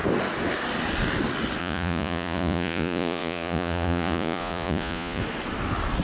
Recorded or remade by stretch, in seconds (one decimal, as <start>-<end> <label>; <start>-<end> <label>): 0.0-1.6 recorded; 1.6-5.2 remade; 5.2-6.0 recorded